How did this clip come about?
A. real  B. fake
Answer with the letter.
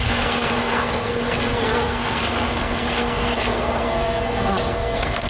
B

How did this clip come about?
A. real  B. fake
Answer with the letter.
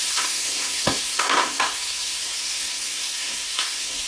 B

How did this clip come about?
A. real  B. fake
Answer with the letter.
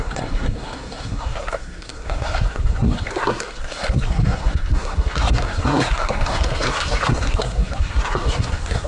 B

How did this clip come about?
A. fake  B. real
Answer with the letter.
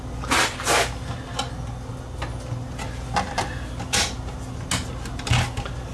B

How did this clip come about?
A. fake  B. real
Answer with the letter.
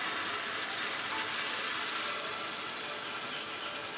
B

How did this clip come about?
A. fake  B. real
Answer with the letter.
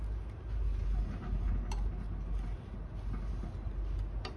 B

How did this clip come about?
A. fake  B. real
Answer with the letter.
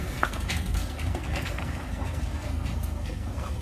A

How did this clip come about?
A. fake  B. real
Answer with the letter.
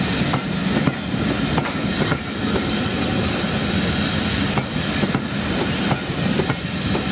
B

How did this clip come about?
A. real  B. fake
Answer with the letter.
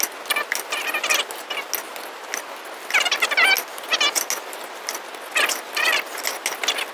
A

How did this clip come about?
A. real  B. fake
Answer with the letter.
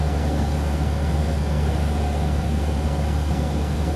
B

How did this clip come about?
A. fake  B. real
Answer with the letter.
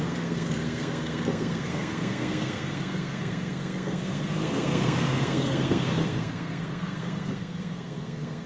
A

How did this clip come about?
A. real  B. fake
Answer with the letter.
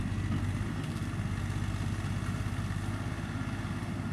A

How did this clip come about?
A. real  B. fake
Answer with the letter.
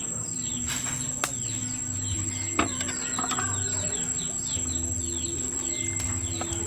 A